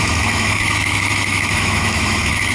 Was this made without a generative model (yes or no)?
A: no